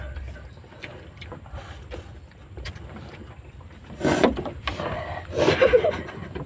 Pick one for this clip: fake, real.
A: fake